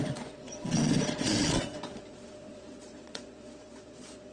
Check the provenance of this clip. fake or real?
fake